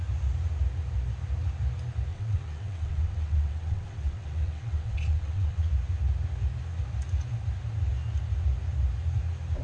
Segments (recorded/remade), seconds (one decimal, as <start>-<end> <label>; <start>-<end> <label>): 0.0-2.1 recorded; 2.1-5.7 remade; 5.7-9.6 recorded